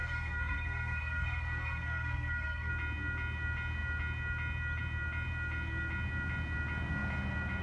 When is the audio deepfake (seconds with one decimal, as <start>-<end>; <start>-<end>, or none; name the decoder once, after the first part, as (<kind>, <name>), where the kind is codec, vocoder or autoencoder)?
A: 0.0-2.7 (codec, SNAC)